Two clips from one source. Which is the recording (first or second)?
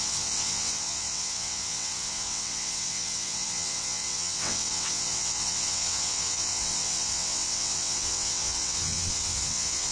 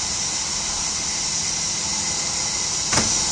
second